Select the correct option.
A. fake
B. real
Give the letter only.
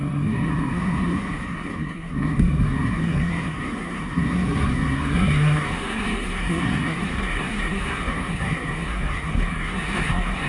A